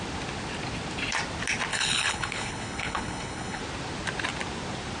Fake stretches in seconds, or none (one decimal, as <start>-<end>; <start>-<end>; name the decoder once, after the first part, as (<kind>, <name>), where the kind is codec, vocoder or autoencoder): 1.7-3.6 (codec, HILCodec)